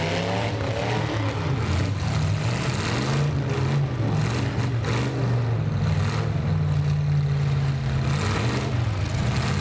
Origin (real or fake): real